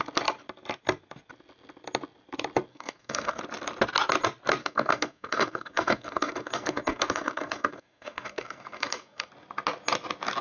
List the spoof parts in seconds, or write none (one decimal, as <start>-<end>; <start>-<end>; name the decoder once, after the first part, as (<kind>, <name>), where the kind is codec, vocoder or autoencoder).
2.7-3.4 (codec, SNAC); 4.6-9.3